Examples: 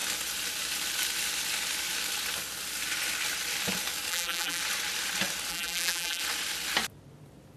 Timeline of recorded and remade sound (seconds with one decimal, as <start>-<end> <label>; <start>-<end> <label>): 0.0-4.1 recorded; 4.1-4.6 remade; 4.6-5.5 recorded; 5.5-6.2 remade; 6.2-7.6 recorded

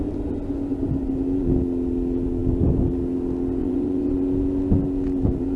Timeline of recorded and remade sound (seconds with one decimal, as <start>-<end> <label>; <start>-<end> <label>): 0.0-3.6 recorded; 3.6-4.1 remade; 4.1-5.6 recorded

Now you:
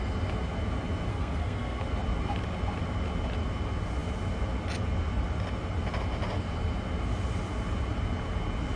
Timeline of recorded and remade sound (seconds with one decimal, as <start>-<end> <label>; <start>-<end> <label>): 0.0-1.1 recorded; 1.1-1.8 remade; 1.8-8.8 recorded

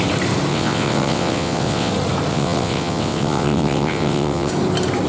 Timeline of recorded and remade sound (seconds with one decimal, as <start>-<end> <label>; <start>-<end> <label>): 0.0-0.5 recorded; 0.5-1.9 remade; 1.9-2.3 recorded; 2.3-4.5 remade; 4.5-5.1 recorded